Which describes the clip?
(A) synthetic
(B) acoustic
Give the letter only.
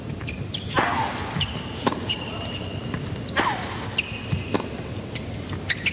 B